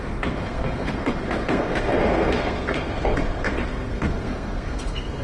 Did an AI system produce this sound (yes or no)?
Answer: yes